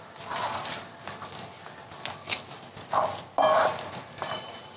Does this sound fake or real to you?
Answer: real